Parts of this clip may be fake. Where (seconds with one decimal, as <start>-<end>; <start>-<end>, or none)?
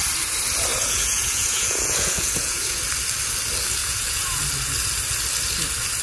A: 0.7-2.8; 3.8-4.4